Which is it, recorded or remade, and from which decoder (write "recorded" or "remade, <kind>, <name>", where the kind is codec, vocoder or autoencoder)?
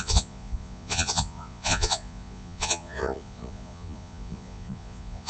remade, vocoder, Vocos